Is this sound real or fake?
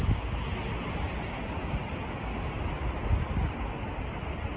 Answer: real